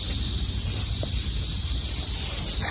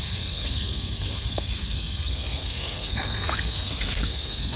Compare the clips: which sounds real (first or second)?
first